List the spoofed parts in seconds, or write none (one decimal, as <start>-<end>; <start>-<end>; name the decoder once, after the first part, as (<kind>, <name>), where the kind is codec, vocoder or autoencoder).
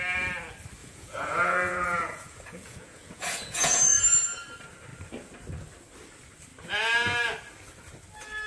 0.8-4.0 (vocoder, Vocos)